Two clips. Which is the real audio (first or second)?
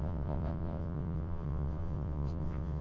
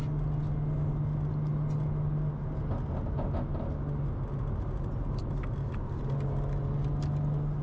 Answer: second